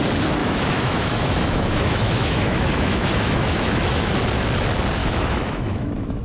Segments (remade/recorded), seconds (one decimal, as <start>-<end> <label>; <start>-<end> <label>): 0.0-0.4 recorded; 0.4-4.1 remade; 4.1-5.0 recorded; 5.0-6.2 remade